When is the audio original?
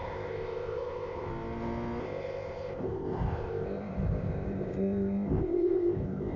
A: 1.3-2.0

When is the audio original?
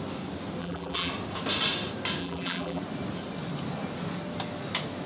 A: 0.0-0.6; 1.1-2.2; 2.8-5.1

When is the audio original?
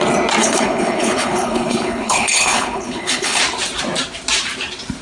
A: 0.0-0.4; 3.4-5.0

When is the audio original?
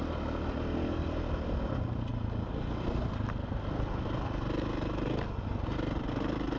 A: 0.0-6.6